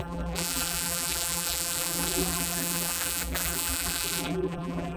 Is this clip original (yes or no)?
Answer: no